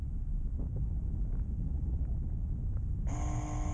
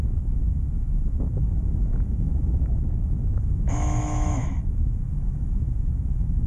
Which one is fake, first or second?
second